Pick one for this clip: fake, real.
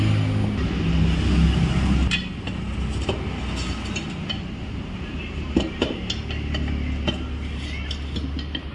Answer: real